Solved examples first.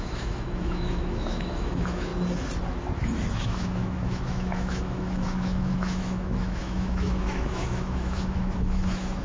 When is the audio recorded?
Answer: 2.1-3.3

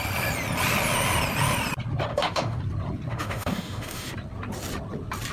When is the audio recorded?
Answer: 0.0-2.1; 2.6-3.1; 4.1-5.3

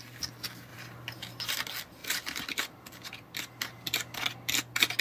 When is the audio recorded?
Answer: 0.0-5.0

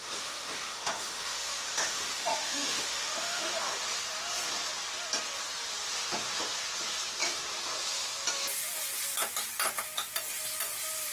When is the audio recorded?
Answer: 3.7-11.1